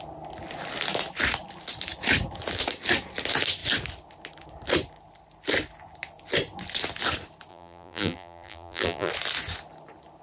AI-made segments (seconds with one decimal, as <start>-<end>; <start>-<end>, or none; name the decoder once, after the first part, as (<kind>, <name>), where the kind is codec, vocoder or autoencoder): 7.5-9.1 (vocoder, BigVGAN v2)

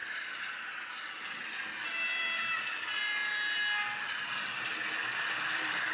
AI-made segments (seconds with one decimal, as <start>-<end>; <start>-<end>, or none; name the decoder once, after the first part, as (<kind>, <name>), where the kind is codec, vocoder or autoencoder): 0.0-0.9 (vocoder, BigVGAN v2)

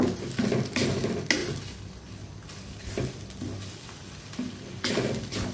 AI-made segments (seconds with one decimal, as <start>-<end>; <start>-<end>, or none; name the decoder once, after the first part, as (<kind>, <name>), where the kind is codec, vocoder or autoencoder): none

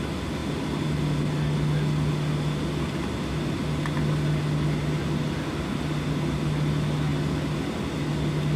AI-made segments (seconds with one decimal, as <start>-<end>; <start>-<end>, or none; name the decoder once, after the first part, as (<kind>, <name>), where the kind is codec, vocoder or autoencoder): none

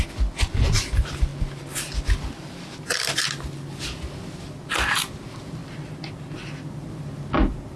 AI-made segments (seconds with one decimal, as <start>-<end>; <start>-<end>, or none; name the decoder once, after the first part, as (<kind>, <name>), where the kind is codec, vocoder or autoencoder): none

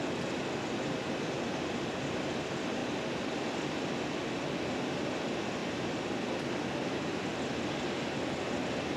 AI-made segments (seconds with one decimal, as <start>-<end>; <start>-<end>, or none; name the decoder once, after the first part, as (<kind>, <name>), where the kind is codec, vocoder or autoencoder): 2.8-4.0 (vocoder, BigVGAN v2)